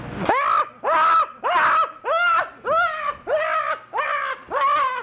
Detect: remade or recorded recorded